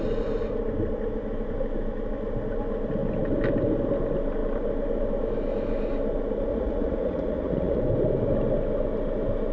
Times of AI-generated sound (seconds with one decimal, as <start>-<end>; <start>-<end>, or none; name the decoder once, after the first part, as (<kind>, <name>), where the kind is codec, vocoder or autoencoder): 6.5-7.8 (vocoder, Vocos)